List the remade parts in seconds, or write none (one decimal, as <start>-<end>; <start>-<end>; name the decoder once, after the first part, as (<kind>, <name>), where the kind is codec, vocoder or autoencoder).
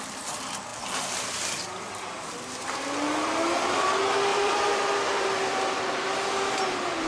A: 0.7-2.5 (vocoder, BigVGAN v2); 4.3-5.6